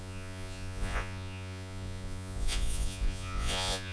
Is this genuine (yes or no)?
no